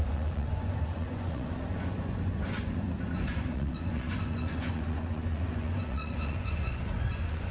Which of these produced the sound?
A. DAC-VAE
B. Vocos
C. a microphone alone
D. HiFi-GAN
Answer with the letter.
B